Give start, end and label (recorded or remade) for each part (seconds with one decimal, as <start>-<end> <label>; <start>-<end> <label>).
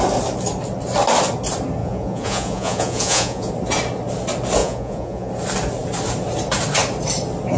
0.0-1.8 recorded; 1.8-3.5 remade; 3.5-4.6 recorded; 4.6-5.3 remade; 5.3-7.6 recorded